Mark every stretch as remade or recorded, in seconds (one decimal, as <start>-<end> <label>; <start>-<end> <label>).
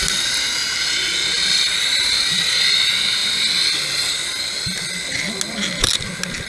0.0-3.2 recorded; 3.2-4.1 remade; 4.1-6.5 recorded